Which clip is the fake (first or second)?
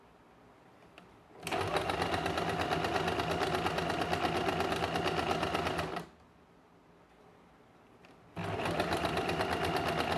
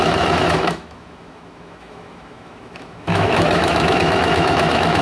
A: second